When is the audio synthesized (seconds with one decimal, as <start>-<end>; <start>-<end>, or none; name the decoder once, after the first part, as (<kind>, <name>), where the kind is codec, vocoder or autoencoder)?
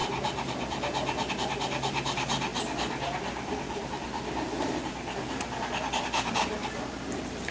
0.5-7.5 (vocoder, BigVGAN v2)